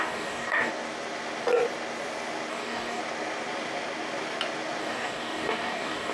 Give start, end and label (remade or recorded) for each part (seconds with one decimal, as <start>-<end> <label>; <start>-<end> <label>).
0.0-0.7 remade; 0.7-2.5 recorded; 2.5-3.0 remade; 3.0-4.8 recorded; 4.8-6.1 remade